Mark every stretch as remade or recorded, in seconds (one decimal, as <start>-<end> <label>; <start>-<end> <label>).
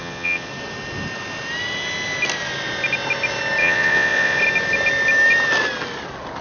0.0-0.5 remade; 0.5-3.6 recorded; 3.6-4.4 remade; 4.4-6.4 recorded